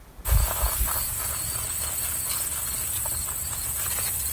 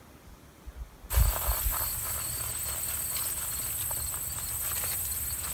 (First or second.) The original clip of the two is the second